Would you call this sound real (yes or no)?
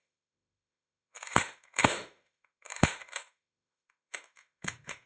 no